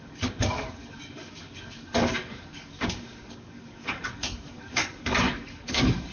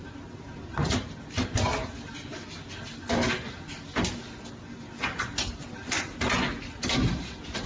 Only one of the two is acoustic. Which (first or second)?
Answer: second